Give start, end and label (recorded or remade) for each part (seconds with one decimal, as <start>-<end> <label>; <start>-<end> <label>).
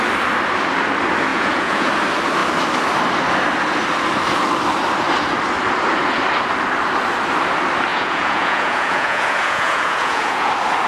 0.0-1.3 recorded; 1.3-1.9 remade; 1.9-7.9 recorded; 7.9-10.5 remade; 10.5-10.9 recorded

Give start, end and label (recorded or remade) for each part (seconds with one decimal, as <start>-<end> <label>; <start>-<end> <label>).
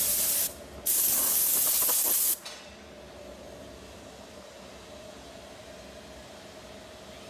0.0-7.3 recorded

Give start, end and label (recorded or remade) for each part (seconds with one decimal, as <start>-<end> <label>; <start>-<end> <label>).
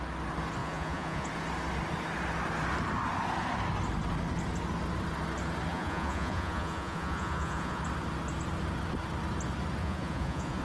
0.0-0.6 recorded; 0.6-1.3 remade; 1.3-5.7 recorded; 5.7-7.8 remade; 7.8-9.8 recorded; 9.8-10.6 remade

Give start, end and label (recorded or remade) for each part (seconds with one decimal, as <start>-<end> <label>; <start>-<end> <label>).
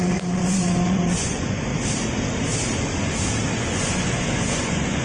0.0-1.7 remade; 1.7-3.6 recorded; 3.6-5.0 remade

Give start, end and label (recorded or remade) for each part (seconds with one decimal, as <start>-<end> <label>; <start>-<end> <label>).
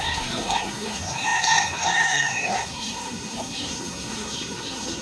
0.0-5.0 remade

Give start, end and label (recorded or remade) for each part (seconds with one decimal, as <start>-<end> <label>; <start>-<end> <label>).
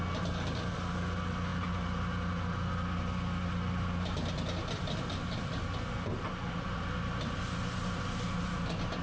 0.0-9.0 recorded